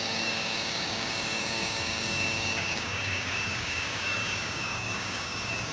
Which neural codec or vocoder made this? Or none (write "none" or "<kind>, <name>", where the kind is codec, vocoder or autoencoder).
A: codec, DAC